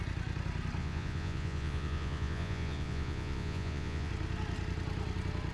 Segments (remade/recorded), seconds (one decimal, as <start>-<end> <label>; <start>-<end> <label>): 0.0-0.8 recorded; 0.8-4.1 remade; 4.1-5.5 recorded